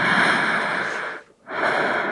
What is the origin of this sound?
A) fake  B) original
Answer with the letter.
B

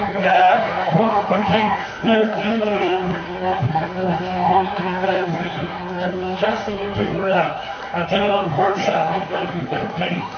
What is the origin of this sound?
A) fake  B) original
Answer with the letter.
A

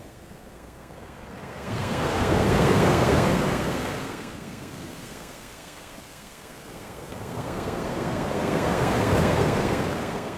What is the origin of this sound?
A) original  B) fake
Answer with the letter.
B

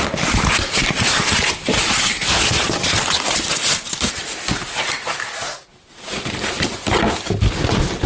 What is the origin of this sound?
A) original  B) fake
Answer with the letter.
A